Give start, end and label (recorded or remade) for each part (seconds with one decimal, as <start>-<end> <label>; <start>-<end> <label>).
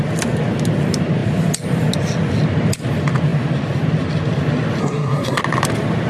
0.0-4.8 recorded; 4.8-5.4 remade; 5.4-6.1 recorded